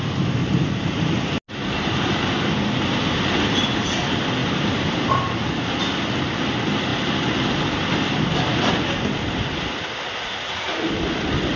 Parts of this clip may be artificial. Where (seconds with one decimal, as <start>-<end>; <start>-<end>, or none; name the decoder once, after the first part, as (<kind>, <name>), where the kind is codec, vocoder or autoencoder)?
0.4-1.4 (vocoder, BigVGAN v2); 4.4-5.7

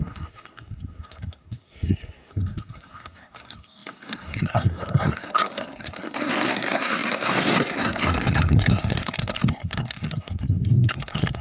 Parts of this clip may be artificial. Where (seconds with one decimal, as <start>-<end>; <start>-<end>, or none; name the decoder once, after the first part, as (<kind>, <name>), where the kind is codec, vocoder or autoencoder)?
0.0-11.4 (codec, SNAC)

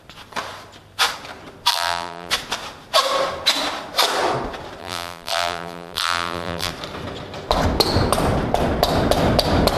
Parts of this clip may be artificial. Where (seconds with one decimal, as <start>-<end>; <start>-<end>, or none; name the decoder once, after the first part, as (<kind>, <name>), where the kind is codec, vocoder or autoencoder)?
1.7-2.3 (vocoder, BigVGAN v2); 4.8-6.7

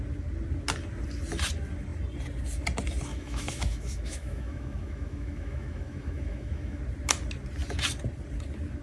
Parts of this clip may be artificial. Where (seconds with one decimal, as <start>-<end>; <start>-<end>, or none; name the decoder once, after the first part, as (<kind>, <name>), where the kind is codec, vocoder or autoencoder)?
3.1-6.8 (autoencoder, DAC-VAE)